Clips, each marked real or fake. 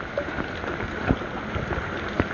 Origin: real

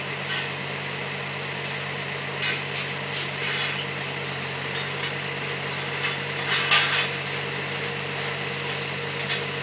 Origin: real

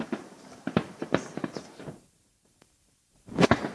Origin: fake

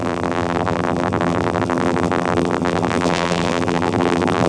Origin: fake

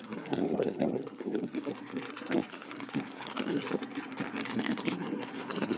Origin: fake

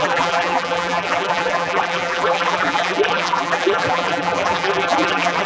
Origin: fake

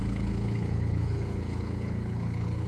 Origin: fake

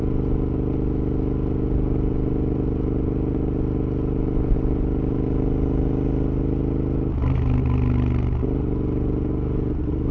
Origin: real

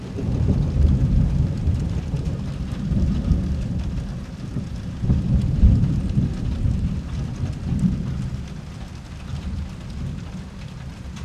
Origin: fake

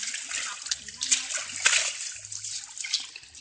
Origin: real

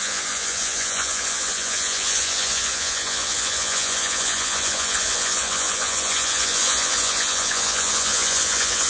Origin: fake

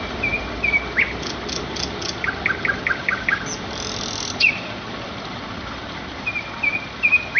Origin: real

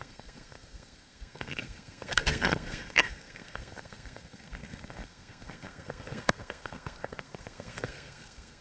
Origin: fake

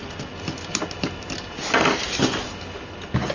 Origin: real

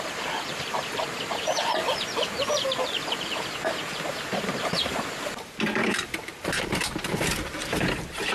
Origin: fake